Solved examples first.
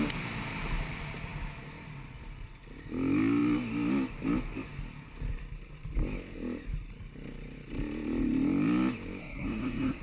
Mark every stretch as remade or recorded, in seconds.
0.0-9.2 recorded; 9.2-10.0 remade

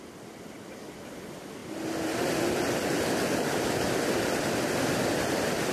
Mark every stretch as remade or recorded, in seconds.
0.0-5.7 recorded

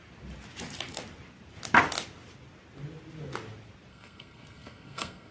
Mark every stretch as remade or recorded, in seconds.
0.0-3.9 recorded; 3.9-5.3 remade

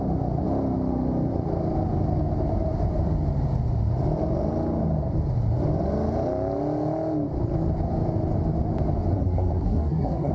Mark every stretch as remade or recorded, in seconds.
0.0-9.1 recorded; 9.1-10.3 remade